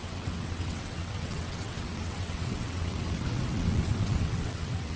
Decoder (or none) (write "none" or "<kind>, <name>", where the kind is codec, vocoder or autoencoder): vocoder, WaveNeXt